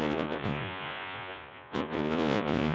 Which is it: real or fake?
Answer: fake